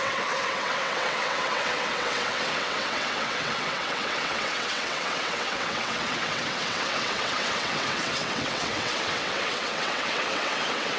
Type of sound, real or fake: fake